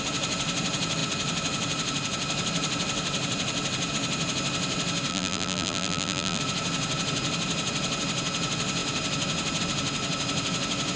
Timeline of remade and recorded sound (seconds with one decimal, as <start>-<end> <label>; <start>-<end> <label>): 0.0-5.1 recorded; 5.1-6.4 remade; 6.4-11.0 recorded